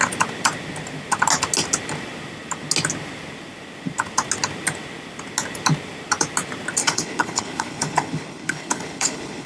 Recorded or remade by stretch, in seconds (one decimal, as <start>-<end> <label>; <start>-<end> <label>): 0.0-6.8 recorded; 6.8-9.5 remade